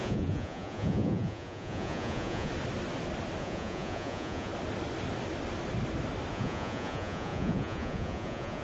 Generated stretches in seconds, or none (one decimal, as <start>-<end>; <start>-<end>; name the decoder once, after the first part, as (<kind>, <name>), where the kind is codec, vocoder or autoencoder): 0.0-2.5 (vocoder, Vocos); 3.4-4.5; 6.3-8.6